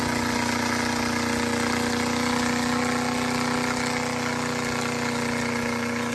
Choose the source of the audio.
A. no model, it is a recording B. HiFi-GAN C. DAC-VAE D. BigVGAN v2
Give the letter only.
A